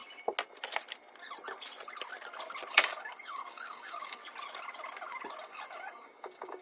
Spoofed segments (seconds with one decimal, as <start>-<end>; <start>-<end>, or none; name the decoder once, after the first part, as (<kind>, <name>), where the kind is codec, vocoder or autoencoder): 2.7-4.2 (codec, DAC); 5.4-6.6